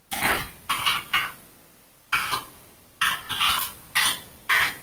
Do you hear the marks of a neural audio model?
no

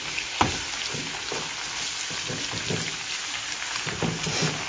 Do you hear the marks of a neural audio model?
no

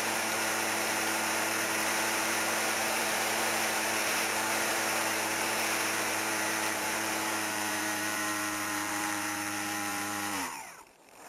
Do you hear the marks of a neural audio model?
yes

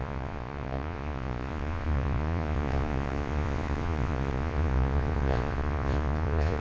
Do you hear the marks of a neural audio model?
yes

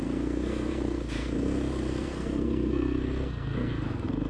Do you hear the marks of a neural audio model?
yes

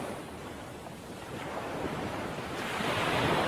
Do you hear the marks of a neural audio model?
yes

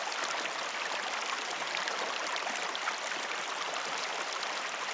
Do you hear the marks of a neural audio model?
no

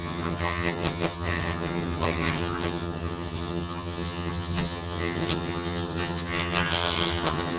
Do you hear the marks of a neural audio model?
yes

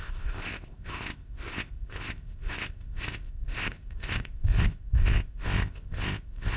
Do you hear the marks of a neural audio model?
yes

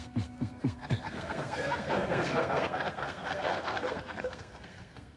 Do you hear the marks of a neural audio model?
yes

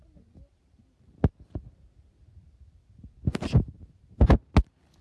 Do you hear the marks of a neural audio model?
no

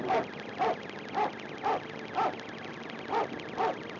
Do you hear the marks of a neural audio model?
no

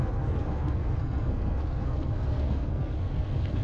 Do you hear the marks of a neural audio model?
yes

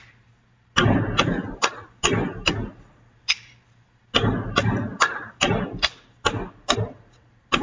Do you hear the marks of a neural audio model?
no